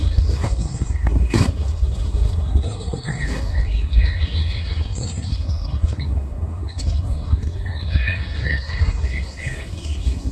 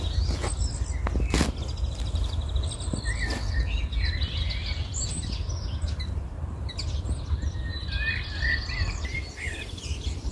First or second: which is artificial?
first